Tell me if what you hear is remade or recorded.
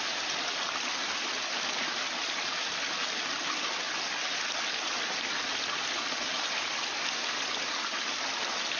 recorded